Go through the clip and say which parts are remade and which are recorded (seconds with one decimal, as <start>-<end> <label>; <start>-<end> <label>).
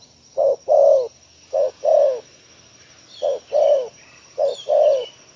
0.0-0.8 remade; 0.8-4.0 recorded; 4.0-5.4 remade